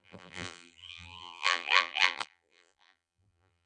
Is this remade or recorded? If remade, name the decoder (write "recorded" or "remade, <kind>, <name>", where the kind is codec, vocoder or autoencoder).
remade, vocoder, BigVGAN v2